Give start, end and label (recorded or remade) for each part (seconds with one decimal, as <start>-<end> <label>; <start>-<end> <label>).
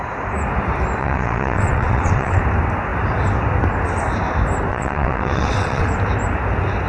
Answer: 0.0-1.0 recorded; 1.0-2.4 remade; 2.4-4.7 recorded; 4.7-5.9 remade; 5.9-6.9 recorded